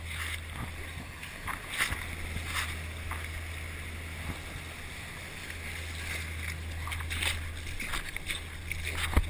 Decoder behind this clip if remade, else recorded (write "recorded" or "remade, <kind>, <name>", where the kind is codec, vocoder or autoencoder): recorded